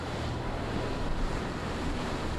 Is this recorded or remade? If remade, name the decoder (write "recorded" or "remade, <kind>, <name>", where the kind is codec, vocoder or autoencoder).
remade, vocoder, BigVGAN v2